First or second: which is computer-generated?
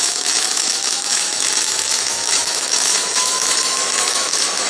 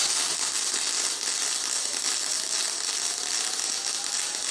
first